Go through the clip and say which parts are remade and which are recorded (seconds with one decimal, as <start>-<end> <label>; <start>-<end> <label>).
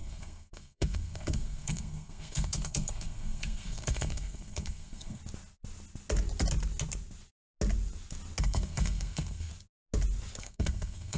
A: 0.0-5.2 remade; 5.2-8.4 recorded; 8.4-9.5 remade; 9.5-10.4 recorded; 10.4-11.2 remade